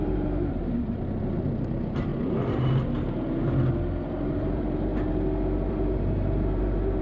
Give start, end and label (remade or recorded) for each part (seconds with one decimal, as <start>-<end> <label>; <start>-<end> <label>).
0.0-2.1 remade; 2.1-4.3 recorded; 4.3-4.9 remade; 4.9-5.7 recorded; 5.7-7.0 remade